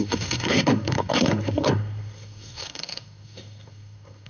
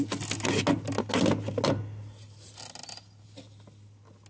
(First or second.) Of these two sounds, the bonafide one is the second